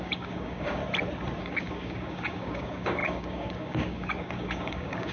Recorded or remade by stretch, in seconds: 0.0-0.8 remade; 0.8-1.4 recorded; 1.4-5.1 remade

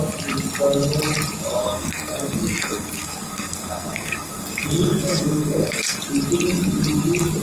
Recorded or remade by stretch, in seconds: 0.0-1.6 recorded; 1.6-6.0 remade; 6.0-7.4 recorded

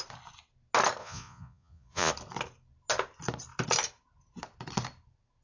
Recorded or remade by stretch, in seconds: 0.0-1.0 recorded; 1.0-2.1 remade; 2.1-5.4 recorded

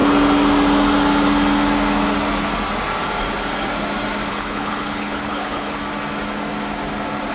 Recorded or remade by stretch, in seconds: 0.0-4.3 recorded; 4.3-5.8 remade; 5.8-7.3 recorded

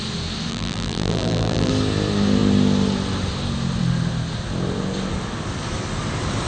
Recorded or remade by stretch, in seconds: 0.0-0.5 recorded; 0.5-1.7 remade; 1.7-6.5 recorded

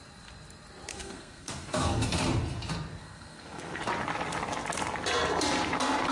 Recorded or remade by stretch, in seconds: 0.0-0.9 recorded; 0.9-2.2 remade; 2.2-3.0 recorded; 3.0-3.8 remade; 3.8-6.1 recorded

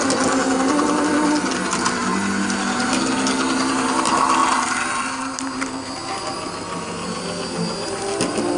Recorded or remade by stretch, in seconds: 0.0-8.6 recorded